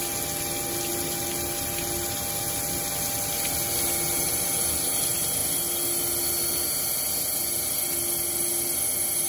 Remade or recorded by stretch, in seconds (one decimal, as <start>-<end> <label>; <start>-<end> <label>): 0.0-9.3 recorded